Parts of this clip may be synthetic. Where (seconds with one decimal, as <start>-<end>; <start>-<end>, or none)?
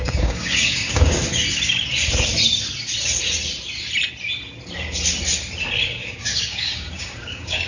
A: 0.0-1.2; 5.8-7.7